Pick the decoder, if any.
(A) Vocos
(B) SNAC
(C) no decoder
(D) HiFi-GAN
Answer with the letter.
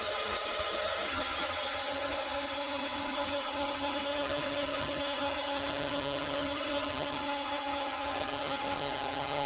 D